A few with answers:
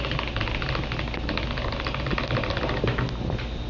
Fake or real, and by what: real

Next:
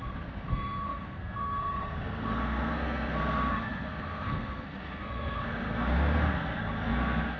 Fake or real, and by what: fake, codec, SNAC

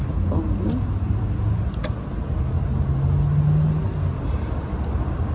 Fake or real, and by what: real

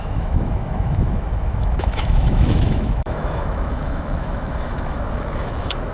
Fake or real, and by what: fake, autoencoder, DAC-VAE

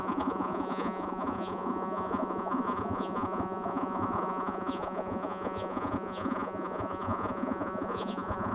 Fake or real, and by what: fake, vocoder, Vocos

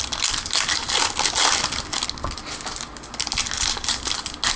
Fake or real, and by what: real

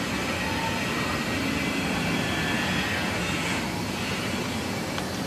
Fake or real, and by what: real